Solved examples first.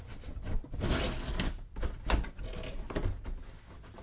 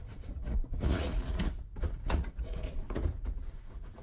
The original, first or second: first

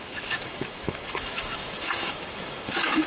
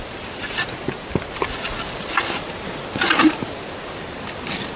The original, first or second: second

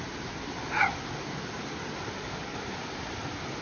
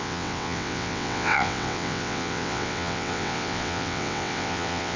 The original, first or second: first